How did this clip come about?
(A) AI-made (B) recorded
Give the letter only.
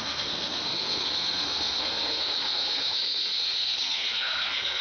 A